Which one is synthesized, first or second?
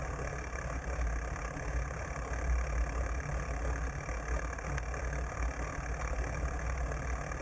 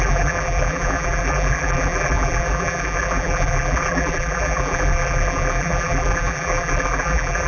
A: second